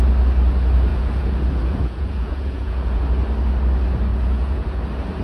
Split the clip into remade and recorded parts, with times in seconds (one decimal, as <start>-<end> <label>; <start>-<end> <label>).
0.0-0.9 recorded; 0.9-3.0 remade; 3.0-4.1 recorded; 4.1-4.8 remade; 4.8-5.2 recorded